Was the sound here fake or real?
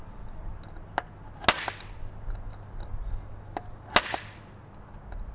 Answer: real